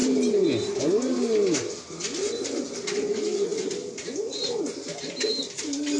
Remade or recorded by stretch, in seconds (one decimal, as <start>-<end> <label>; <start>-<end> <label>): 0.0-6.0 recorded